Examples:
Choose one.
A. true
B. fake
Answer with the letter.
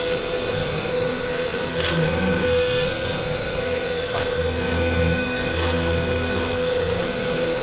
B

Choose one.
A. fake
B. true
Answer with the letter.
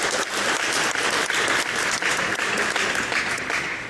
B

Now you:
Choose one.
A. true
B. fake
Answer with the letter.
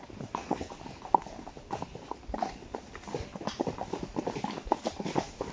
A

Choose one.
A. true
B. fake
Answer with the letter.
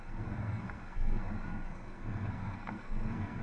B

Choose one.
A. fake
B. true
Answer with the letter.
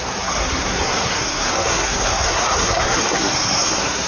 A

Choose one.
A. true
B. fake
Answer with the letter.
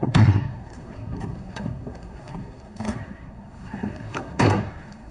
B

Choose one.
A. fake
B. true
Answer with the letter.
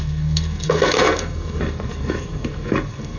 A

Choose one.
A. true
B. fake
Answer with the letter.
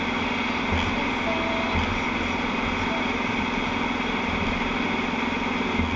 A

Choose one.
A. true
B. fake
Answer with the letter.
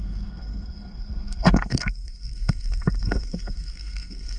B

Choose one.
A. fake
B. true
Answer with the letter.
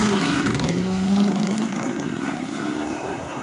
A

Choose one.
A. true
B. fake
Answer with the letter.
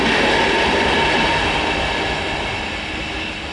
A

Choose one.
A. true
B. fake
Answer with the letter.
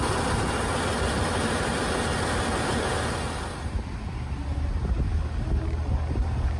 A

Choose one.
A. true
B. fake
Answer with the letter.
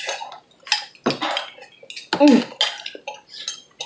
A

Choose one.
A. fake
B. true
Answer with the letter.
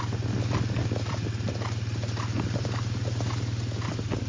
B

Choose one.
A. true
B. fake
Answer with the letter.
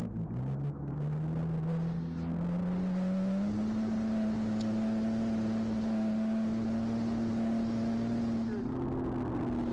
A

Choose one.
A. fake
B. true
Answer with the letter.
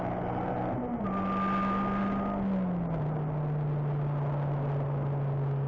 B